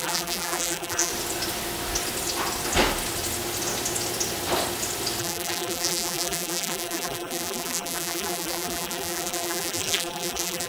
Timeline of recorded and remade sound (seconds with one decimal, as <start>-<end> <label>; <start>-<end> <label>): 0.0-1.1 remade; 1.1-5.2 recorded; 5.2-10.7 remade